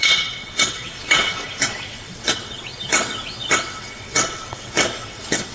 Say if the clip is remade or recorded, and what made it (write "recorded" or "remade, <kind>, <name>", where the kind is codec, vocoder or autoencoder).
remade, vocoder, WaveNeXt